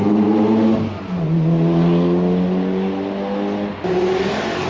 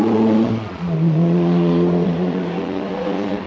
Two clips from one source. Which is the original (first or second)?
first